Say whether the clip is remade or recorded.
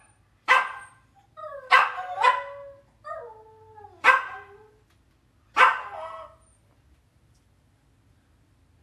recorded